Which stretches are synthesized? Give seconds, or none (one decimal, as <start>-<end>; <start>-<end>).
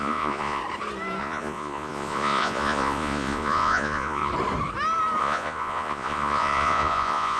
0.0-0.6; 1.2-4.3; 5.2-7.4